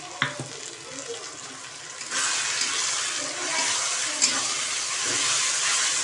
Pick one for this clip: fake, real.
real